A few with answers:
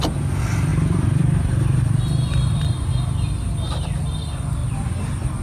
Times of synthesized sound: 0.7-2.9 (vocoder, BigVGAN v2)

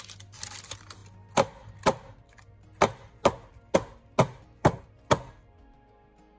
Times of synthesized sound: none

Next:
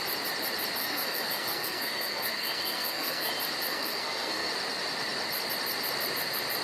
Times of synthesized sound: 0.8-3.3 (codec, SNAC); 3.7-4.5

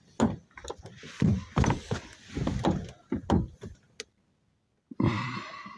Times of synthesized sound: none

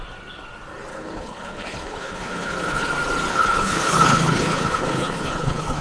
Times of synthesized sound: 0.9-2.9 (codec, HILCodec); 3.3-5.8